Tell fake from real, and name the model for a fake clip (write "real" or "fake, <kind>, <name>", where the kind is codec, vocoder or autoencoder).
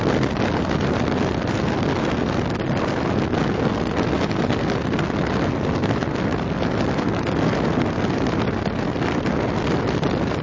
real